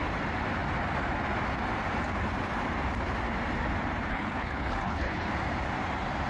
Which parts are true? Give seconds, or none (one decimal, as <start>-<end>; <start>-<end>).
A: 0.0-4.1; 5.3-6.3